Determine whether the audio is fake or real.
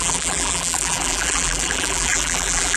fake